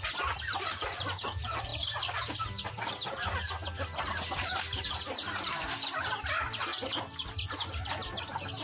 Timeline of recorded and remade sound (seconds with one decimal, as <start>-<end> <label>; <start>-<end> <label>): 0.0-1.7 remade; 1.7-3.5 recorded; 3.5-6.7 remade; 6.7-8.2 recorded; 8.2-8.6 remade

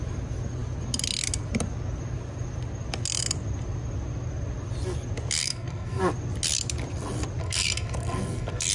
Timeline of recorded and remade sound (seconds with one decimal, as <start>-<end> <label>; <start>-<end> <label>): 0.0-5.4 recorded; 5.4-6.0 remade; 6.0-7.4 recorded; 7.4-8.7 remade